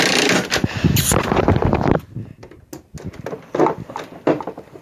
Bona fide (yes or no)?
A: yes